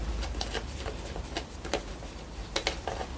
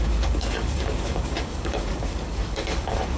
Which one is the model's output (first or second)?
second